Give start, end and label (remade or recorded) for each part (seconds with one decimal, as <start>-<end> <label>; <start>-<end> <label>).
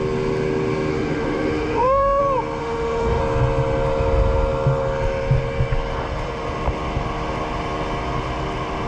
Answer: 0.0-0.9 recorded; 0.9-2.2 remade; 2.2-2.6 recorded; 2.6-3.2 remade; 3.2-8.9 recorded